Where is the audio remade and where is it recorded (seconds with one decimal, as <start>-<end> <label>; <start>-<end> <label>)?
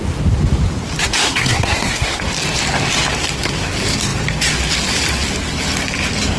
0.0-1.2 recorded; 1.2-2.2 remade; 2.2-6.4 recorded